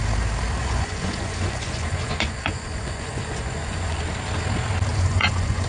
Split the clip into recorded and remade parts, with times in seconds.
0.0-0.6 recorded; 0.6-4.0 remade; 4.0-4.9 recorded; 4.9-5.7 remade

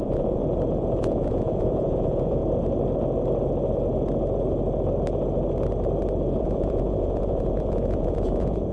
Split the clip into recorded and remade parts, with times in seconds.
0.0-0.4 remade; 0.4-1.0 recorded; 1.0-2.4 remade; 2.4-6.4 recorded; 6.4-8.7 remade

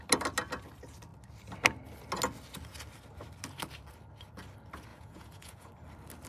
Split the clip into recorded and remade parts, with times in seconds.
0.0-4.9 recorded; 4.9-5.7 remade; 5.7-6.3 recorded

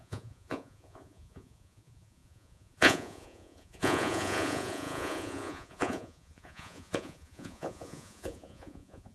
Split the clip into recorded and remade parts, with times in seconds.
0.0-9.1 remade

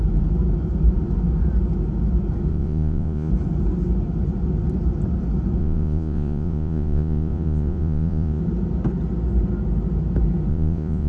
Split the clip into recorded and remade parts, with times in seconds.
0.0-2.5 recorded; 2.5-3.3 remade; 3.3-5.6 recorded; 5.6-8.4 remade; 8.4-10.5 recorded; 10.5-11.1 remade

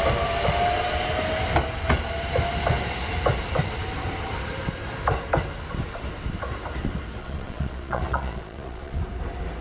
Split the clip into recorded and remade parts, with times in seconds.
0.0-7.2 recorded; 7.2-9.0 remade; 9.0-9.6 recorded

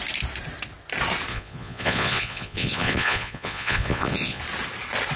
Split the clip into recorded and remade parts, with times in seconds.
0.0-1.3 recorded; 1.3-4.4 remade; 4.4-5.2 recorded